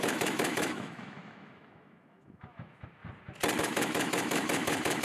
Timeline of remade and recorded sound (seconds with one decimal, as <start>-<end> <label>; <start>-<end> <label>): 0.0-3.0 remade; 3.0-3.6 recorded; 3.6-5.0 remade